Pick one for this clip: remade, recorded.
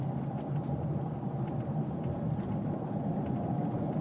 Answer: recorded